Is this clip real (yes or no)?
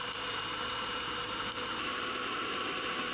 no